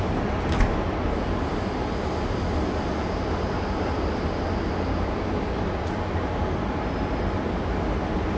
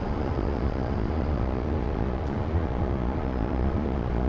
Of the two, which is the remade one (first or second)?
second